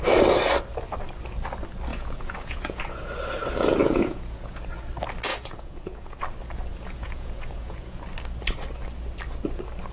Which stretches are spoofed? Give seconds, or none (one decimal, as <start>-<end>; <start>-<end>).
1.9-2.8; 3.8-4.6; 5.3-6.2; 6.7-8.0